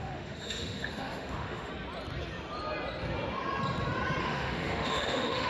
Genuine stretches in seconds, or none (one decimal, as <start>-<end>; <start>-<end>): 1.7-4.2